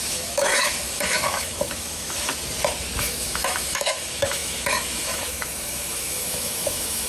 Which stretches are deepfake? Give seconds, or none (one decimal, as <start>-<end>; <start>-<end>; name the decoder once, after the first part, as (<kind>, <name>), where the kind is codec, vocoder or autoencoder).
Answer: 0.0-2.3 (autoencoder, DAC-VAE); 3.0-7.1